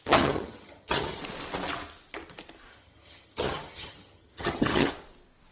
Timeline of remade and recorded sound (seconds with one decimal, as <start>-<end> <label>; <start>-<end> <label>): 0.0-1.2 remade; 1.2-2.7 recorded; 2.7-4.9 remade; 4.9-5.5 recorded